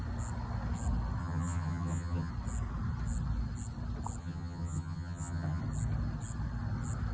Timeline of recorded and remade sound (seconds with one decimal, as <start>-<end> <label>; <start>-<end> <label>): 0.0-1.2 recorded; 1.2-2.3 remade; 2.3-4.2 recorded; 4.2-5.6 remade; 5.6-7.1 recorded